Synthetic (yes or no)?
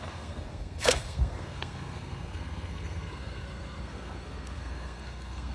yes